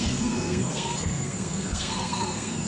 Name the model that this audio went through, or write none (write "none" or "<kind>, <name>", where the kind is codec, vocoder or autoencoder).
codec, SNAC